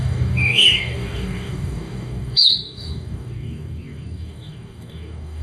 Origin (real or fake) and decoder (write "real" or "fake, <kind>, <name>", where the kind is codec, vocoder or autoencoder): fake, codec, DAC